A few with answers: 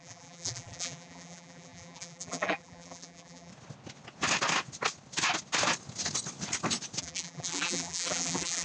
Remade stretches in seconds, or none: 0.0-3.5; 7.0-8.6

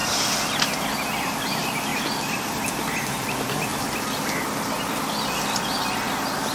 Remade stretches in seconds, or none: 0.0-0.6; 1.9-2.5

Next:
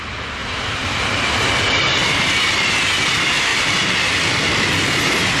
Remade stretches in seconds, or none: 0.4-1.6; 2.0-2.7; 3.5-4.1

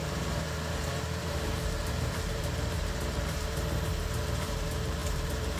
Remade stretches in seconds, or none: 0.0-5.6